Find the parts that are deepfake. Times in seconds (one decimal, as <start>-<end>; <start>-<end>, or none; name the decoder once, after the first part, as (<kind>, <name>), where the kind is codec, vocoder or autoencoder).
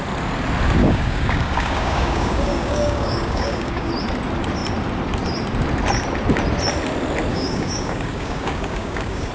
0.8-3.9 (codec, DAC); 7.3-9.3